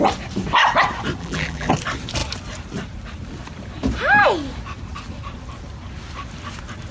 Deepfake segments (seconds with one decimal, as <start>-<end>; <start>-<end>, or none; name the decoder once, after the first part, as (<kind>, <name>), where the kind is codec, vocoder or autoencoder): 1.2-1.7 (vocoder, BigVGAN v2)